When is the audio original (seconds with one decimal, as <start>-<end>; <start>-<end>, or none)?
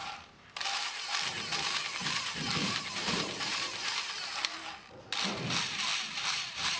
0.8-2.6; 4.1-6.8